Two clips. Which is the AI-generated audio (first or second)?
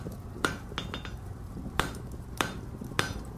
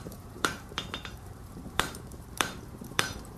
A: second